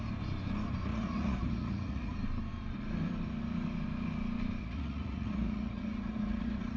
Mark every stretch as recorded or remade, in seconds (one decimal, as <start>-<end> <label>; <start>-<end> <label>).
0.0-0.9 recorded; 0.9-2.1 remade; 2.1-4.6 recorded; 4.6-6.8 remade